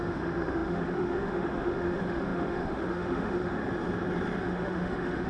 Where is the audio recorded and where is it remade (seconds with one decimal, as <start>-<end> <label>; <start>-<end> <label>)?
0.0-3.6 remade; 3.6-4.4 recorded; 4.4-5.3 remade